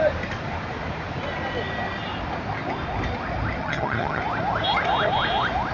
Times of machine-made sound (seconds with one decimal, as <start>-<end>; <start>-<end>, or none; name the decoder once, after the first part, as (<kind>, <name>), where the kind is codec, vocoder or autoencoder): 3.6-4.2 (vocoder, HiFi-GAN)